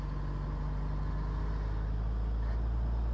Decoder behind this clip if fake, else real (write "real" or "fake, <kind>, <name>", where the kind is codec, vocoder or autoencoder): real